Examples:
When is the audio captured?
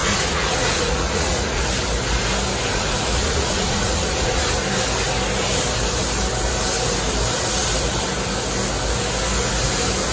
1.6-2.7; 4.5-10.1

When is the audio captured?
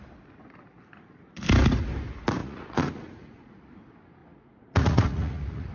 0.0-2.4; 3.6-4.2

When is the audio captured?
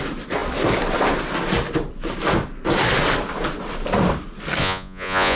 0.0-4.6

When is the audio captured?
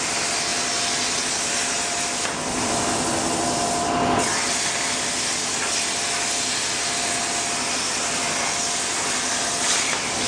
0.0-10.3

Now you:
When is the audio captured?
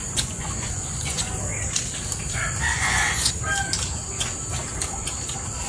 1.4-2.7; 3.3-5.7